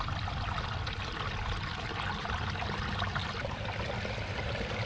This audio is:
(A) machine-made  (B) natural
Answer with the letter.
B